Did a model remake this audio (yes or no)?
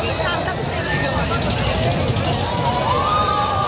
yes